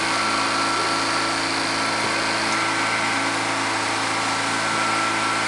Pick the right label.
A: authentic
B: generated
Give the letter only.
A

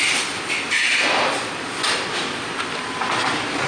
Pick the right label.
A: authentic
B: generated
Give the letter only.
B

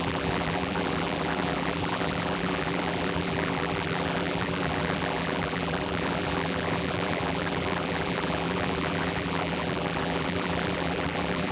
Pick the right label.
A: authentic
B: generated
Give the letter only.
B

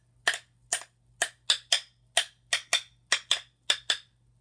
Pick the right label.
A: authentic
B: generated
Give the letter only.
A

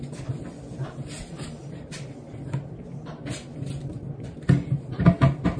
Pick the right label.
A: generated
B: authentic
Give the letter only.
B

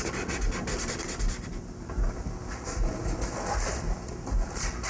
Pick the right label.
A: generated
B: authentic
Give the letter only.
B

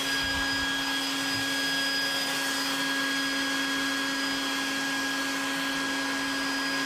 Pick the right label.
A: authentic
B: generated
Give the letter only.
A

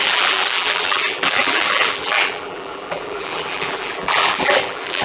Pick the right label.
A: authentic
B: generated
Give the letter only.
B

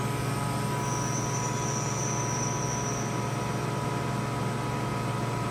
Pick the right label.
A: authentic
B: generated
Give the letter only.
A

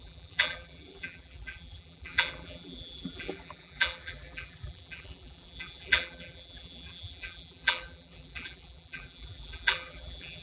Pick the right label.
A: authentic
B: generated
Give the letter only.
B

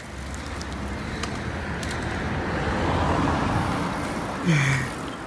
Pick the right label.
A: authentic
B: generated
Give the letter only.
A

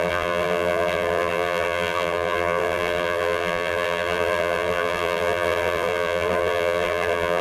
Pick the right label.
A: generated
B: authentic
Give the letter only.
A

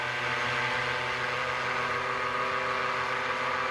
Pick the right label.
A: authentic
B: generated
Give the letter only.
A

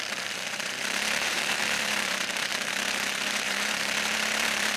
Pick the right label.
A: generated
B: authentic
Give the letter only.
A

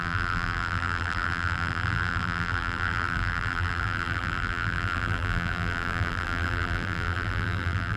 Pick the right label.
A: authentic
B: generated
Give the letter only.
B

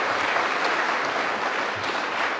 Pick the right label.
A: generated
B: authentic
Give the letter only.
A